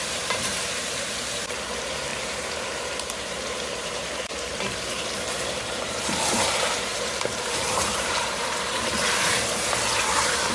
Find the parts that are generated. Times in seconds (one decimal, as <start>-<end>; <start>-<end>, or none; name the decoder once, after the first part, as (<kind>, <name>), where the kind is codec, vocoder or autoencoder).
0.0-8.9 (vocoder, BigVGAN v2); 10.0-10.5